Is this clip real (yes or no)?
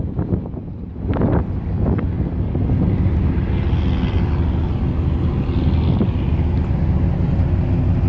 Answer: yes